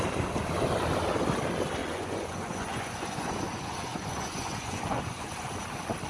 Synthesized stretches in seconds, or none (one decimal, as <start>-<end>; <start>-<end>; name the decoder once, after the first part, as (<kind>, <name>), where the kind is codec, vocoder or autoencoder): 1.8-5.5 (vocoder, Vocos)